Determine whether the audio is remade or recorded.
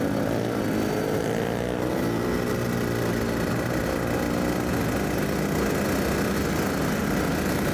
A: recorded